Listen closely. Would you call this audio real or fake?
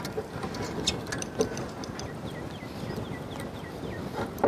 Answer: real